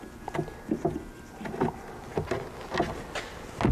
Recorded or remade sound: recorded